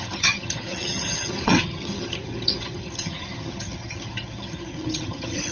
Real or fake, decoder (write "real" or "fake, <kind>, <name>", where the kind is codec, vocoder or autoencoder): fake, vocoder, HiFi-GAN